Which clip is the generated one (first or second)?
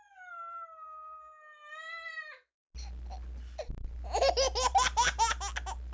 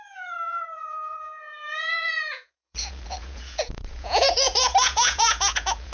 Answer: second